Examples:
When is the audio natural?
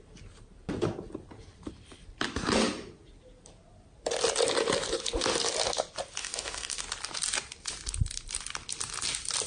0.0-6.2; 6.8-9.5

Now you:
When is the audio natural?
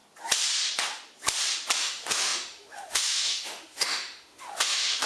0.0-1.8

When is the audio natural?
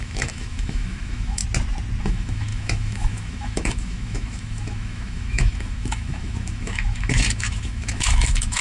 1.4-2.0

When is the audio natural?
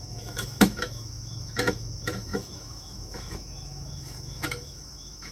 none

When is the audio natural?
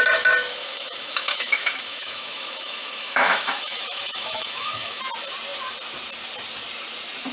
0.0-0.6; 5.0-7.3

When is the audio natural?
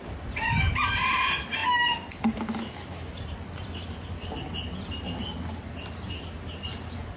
0.0-1.6; 3.1-7.2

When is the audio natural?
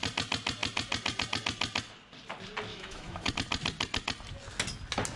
0.0-2.7; 3.3-5.2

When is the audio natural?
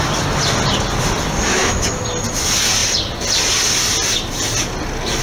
0.0-1.5; 2.0-5.2